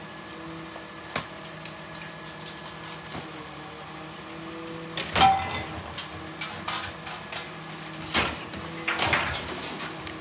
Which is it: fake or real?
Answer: real